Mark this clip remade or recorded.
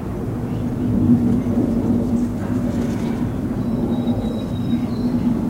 recorded